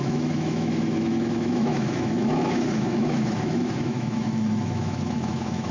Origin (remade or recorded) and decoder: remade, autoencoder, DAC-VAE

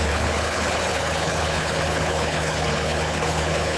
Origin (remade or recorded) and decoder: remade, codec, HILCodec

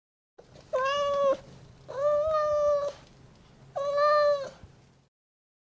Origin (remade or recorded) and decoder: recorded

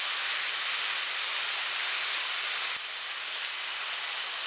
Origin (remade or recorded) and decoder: recorded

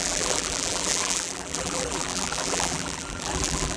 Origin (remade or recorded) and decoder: remade, vocoder, BigVGAN v2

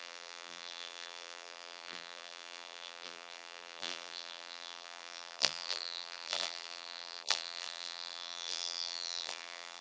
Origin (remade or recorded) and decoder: remade, vocoder, BigVGAN v2